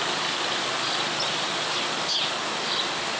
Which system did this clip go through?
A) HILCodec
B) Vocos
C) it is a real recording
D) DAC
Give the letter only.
C